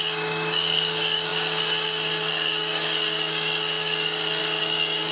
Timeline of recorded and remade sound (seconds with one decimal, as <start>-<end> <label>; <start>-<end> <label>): 0.0-5.1 remade